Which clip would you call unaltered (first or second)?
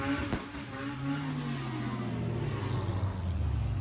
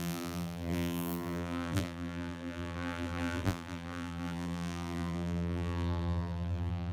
first